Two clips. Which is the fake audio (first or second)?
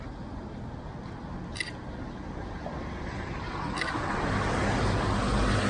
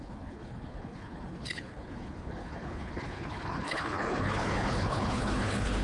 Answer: second